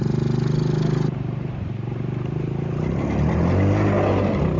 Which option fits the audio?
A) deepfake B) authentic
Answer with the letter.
B